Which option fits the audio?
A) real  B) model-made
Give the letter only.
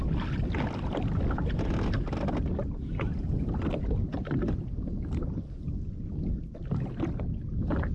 A